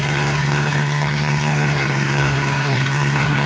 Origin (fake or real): fake